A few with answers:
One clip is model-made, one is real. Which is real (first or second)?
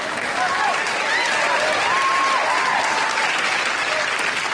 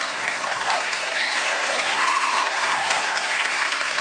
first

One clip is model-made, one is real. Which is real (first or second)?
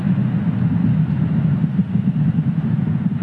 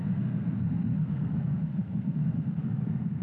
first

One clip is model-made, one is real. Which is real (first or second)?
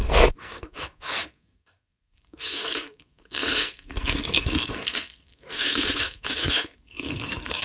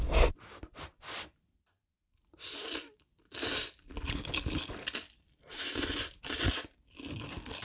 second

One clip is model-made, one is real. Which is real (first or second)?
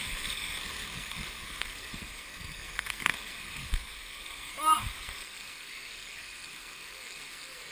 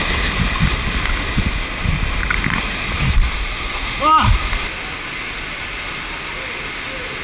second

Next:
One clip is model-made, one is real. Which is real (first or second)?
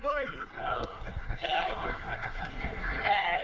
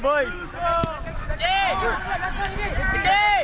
second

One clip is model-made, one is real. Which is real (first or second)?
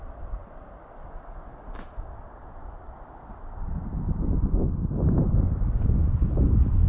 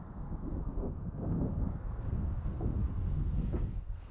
first